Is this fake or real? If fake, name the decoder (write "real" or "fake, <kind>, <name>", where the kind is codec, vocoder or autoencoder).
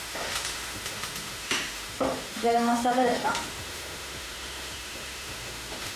fake, autoencoder, DAC-VAE